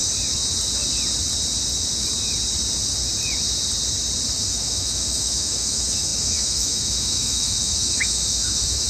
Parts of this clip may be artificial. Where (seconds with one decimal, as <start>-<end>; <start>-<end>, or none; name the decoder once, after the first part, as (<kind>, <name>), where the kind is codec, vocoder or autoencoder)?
4.4-8.9 (autoencoder, DAC-VAE)